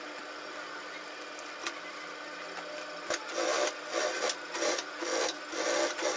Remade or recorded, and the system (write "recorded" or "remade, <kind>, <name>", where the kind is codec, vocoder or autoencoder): recorded